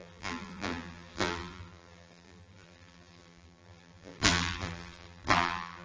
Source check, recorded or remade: remade